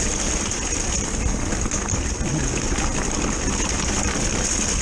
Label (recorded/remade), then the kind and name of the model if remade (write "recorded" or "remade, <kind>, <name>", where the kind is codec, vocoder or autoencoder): recorded